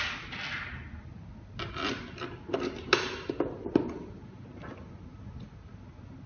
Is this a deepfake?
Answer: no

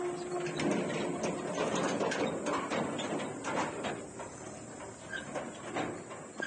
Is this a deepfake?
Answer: no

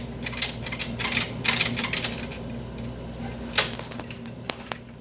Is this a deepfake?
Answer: no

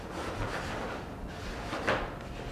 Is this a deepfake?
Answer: no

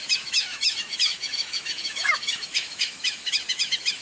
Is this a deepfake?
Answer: yes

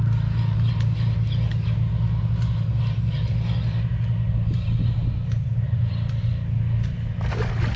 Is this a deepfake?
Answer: no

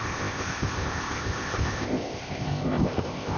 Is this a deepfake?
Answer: yes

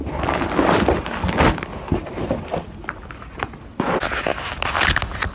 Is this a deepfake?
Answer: no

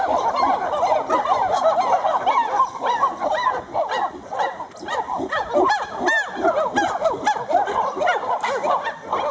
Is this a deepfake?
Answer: no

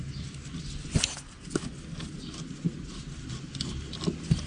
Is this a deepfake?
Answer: no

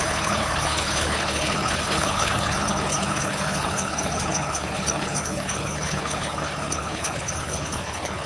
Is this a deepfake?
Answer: yes